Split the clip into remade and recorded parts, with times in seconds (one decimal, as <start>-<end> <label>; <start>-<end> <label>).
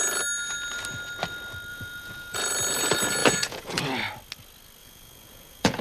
0.0-1.7 recorded; 1.7-2.5 remade; 2.5-3.2 recorded; 3.2-3.8 remade; 3.8-4.8 recorded; 4.8-5.8 remade